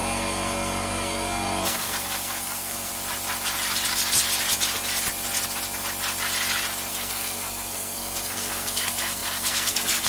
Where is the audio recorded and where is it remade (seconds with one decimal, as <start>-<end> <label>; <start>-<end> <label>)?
0.0-2.9 remade; 2.9-6.9 recorded; 6.9-10.1 remade